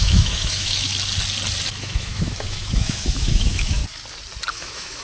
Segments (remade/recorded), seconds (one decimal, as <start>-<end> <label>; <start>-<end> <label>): 0.0-0.9 remade; 0.9-1.8 recorded; 1.8-3.8 remade; 3.8-4.5 recorded; 4.5-5.0 remade